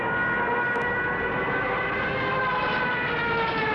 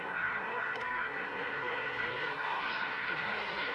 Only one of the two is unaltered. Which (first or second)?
first